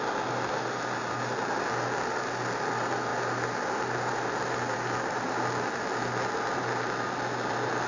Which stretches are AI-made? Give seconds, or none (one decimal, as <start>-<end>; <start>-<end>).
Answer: none